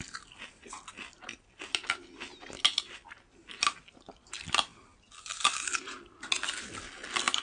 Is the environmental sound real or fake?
real